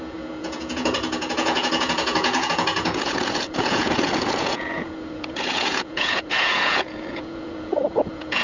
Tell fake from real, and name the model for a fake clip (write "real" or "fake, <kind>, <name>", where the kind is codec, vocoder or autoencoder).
fake, vocoder, Vocos